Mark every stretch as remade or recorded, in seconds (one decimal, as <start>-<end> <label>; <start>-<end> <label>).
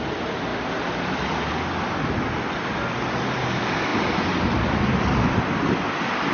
0.0-6.3 recorded